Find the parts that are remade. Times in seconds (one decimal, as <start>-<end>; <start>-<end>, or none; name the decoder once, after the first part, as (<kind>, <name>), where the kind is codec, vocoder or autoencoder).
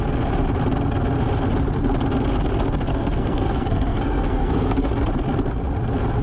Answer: 2.9-4.9 (codec, SNAC)